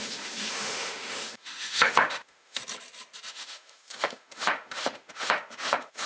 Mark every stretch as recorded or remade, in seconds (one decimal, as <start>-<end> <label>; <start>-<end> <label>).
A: 0.0-2.6 remade; 2.6-3.3 recorded; 3.3-6.1 remade